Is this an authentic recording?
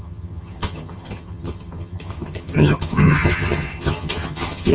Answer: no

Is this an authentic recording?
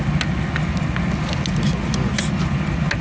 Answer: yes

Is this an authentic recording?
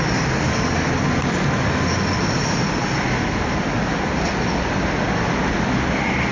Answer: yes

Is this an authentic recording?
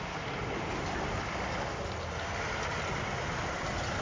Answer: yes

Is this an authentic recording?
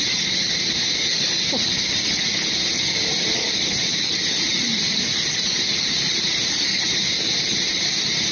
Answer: yes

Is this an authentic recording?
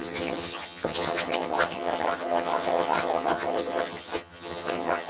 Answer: no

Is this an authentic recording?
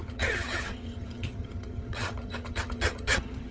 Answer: no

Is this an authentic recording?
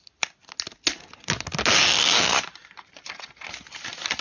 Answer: yes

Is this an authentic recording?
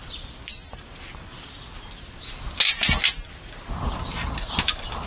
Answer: yes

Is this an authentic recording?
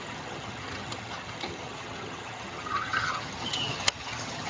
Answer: no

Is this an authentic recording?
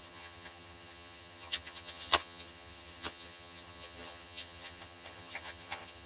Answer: no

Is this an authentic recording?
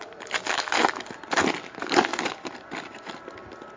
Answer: yes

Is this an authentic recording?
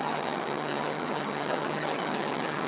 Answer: no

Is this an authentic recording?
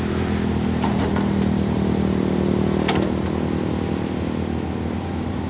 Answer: yes